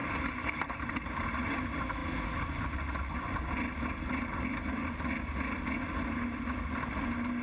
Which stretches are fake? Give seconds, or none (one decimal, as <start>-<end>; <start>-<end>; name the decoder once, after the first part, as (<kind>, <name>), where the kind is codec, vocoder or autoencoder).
none